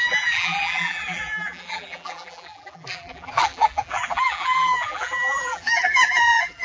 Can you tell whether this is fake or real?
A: fake